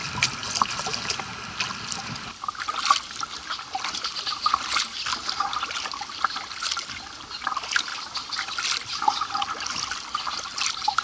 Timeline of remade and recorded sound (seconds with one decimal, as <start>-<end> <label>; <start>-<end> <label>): 0.0-11.0 recorded